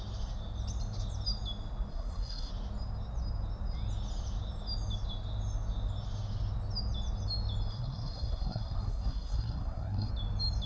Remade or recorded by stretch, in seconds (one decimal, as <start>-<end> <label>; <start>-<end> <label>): 0.0-1.9 recorded; 1.9-2.5 remade; 2.5-7.7 recorded; 7.7-10.1 remade; 10.1-10.7 recorded